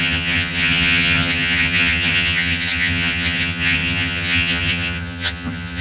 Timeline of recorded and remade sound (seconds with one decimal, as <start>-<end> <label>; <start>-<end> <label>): 0.0-5.8 remade